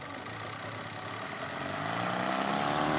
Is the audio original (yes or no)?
yes